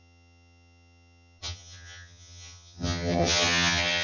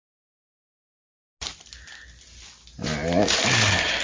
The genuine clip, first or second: second